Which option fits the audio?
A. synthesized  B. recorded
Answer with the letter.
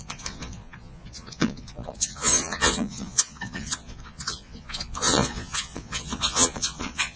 A